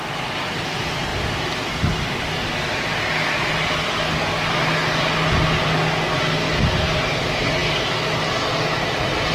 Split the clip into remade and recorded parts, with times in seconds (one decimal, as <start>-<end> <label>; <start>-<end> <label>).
0.0-9.3 recorded